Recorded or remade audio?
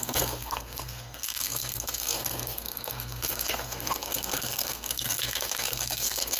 remade